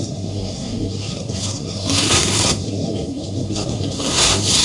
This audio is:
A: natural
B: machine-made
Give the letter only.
B